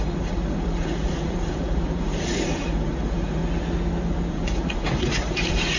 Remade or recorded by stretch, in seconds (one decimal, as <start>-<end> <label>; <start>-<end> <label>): 0.0-3.4 remade; 3.4-4.3 recorded; 4.3-5.8 remade